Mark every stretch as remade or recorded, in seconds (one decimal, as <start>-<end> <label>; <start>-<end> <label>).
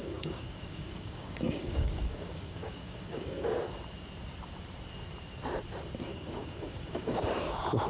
0.0-3.5 remade; 3.5-6.1 recorded; 6.1-7.3 remade; 7.3-7.9 recorded